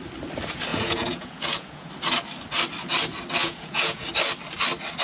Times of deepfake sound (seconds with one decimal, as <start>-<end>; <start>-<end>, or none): 0.7-1.9; 3.4-4.1